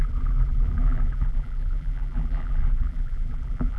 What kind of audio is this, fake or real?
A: fake